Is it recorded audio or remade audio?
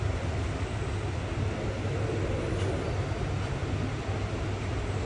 recorded